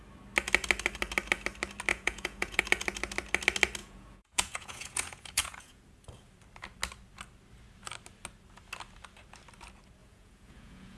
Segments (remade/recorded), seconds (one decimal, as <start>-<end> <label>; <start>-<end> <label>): 0.0-1.9 recorded; 1.9-2.6 remade; 2.6-3.8 recorded; 3.8-5.8 remade; 5.8-10.0 recorded; 10.0-11.0 remade